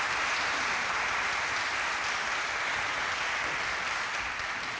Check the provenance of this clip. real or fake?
real